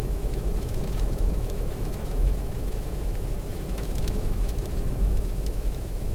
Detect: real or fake fake